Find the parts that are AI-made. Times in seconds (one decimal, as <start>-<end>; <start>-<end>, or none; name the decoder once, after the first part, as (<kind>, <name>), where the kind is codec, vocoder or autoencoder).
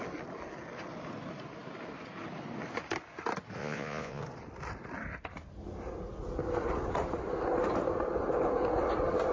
3.6-4.2 (vocoder, Vocos)